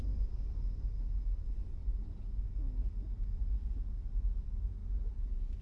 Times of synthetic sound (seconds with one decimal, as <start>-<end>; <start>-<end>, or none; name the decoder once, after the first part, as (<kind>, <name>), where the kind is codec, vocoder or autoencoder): none